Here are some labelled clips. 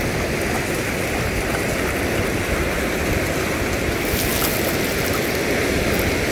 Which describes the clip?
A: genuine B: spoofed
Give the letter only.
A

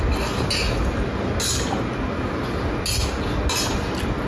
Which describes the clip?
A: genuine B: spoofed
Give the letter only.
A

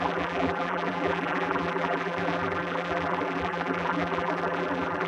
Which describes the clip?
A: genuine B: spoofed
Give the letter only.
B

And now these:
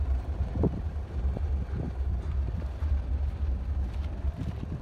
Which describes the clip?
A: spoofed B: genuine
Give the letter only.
A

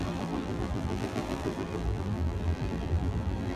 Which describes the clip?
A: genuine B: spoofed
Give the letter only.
B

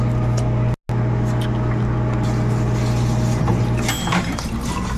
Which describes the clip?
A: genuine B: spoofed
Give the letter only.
A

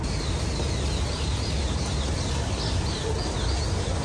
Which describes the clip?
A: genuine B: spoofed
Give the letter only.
A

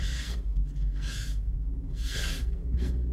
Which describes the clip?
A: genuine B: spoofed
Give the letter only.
B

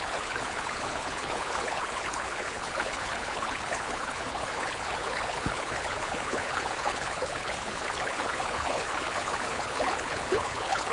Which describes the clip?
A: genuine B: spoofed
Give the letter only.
B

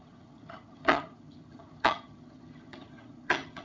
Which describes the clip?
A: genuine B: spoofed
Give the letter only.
B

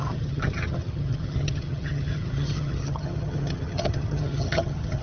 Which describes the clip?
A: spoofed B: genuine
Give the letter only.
A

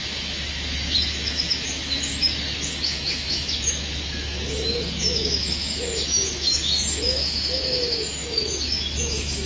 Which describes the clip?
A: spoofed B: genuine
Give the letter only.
A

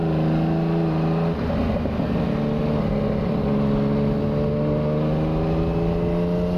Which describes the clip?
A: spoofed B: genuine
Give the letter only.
B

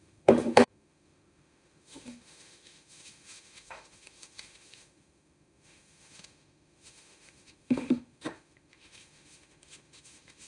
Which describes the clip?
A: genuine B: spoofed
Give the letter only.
B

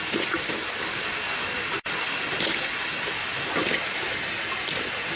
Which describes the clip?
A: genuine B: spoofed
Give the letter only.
A